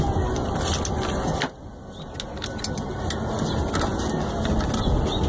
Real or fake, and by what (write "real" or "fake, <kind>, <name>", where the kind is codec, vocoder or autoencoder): real